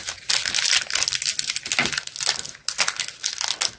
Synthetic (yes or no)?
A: no